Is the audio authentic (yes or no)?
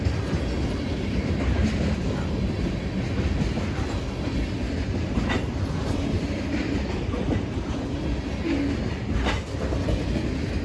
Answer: yes